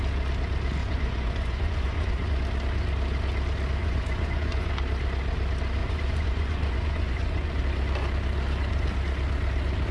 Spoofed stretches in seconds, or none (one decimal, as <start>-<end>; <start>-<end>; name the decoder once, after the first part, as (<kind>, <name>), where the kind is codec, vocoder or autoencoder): 0.8-2.4 (vocoder, Vocos); 3.8-4.7; 5.8-7.6